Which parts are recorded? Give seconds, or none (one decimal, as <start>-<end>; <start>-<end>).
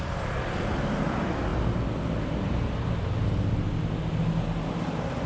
1.5-4.7